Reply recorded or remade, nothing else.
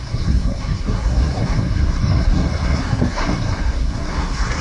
remade